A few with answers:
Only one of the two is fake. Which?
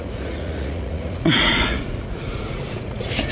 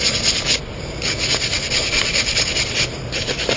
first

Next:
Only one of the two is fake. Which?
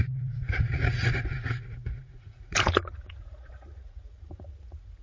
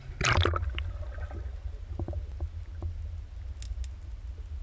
first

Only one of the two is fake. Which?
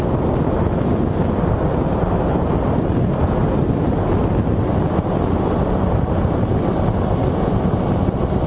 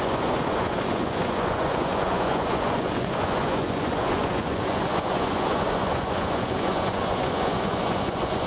second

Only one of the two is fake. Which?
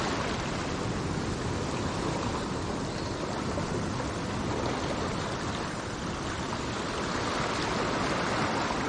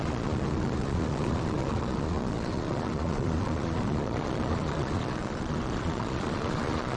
second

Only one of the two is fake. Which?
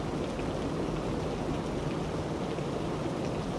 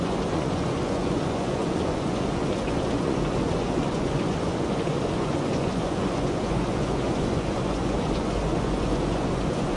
second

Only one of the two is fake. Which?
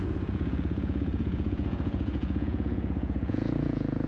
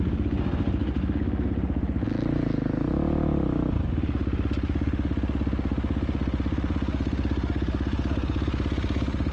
first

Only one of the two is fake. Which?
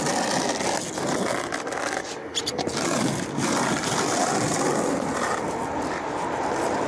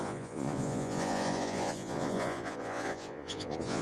second